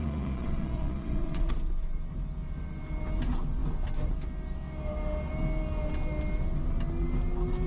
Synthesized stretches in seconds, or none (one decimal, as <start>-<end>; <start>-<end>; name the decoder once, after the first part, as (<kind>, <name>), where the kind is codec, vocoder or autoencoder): 0.0-1.5 (vocoder, Vocos)